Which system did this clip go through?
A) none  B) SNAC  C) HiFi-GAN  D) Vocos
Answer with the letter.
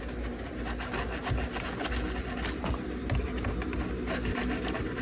A